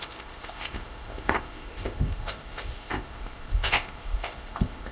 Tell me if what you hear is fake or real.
fake